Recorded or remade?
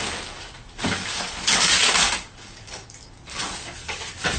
remade